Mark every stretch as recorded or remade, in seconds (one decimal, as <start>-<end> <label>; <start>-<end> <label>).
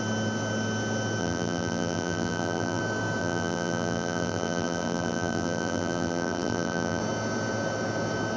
0.0-1.2 recorded; 1.2-2.8 remade; 2.8-3.2 recorded; 3.2-7.0 remade; 7.0-8.4 recorded